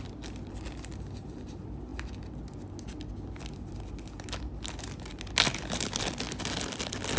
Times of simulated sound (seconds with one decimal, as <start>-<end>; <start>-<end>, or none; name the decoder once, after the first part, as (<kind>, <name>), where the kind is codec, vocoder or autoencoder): none